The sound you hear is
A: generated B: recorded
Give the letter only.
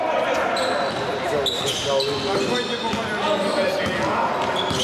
B